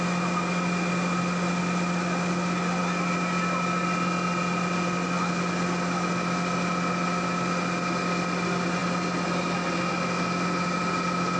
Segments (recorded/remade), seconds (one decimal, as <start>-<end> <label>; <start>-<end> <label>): 0.0-11.4 recorded